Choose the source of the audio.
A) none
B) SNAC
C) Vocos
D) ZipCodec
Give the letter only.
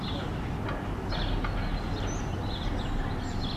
A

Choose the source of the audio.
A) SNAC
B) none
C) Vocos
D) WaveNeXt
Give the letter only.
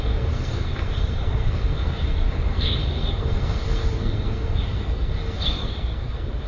A